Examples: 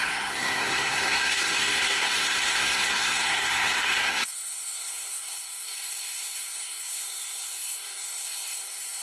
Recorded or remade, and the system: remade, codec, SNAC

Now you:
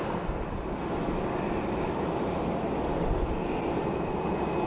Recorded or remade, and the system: recorded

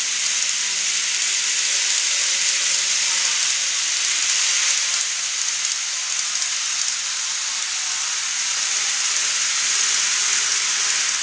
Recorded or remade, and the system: recorded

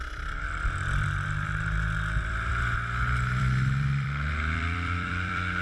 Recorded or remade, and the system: remade, vocoder, BigVGAN v2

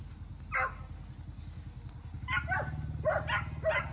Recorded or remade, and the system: recorded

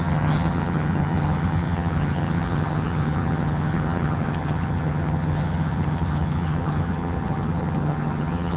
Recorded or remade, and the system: remade, vocoder, HiFi-GAN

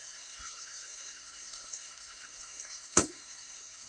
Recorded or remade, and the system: remade, codec, SNAC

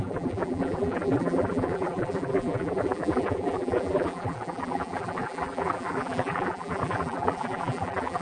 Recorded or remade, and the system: remade, vocoder, BigVGAN v2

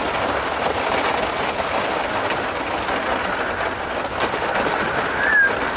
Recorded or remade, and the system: recorded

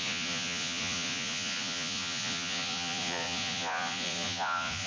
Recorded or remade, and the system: remade, vocoder, Vocos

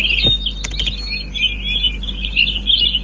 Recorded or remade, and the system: recorded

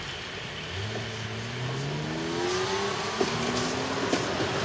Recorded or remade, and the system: recorded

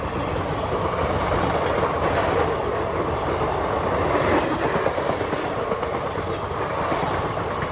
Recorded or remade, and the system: recorded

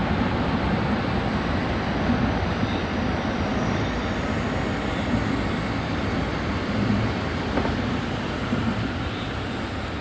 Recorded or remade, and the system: recorded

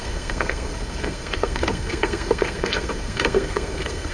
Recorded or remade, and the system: remade, codec, SNAC